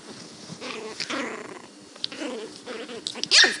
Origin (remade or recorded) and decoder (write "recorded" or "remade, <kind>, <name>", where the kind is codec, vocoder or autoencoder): recorded